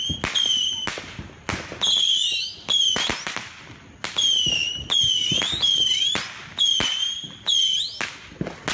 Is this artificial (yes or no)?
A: no